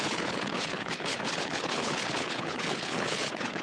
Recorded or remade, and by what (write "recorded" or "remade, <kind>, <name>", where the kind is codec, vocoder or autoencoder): remade, codec, HILCodec